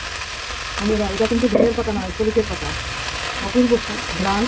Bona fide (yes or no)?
yes